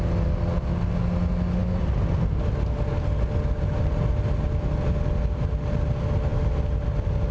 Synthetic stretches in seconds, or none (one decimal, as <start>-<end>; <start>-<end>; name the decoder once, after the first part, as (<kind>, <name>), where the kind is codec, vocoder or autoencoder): none